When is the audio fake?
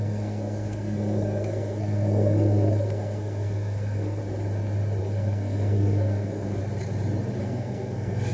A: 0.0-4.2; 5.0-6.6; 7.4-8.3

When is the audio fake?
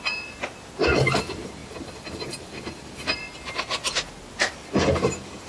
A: 1.6-3.2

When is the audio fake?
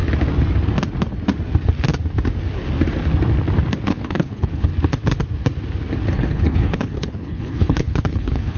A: 3.9-4.7; 6.1-8.6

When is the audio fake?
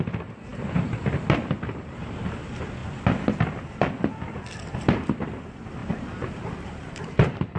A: 5.8-7.6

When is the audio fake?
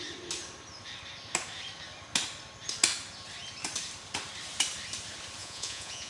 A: 5.4-6.1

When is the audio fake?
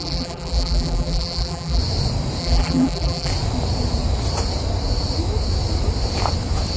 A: 0.0-1.8; 2.4-3.3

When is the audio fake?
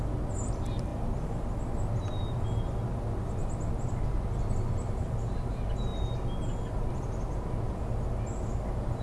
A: none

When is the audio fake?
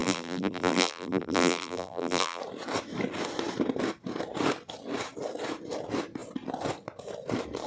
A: 0.0-2.4